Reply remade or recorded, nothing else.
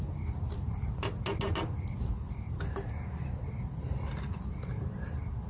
recorded